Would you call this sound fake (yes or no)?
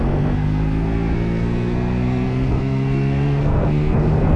yes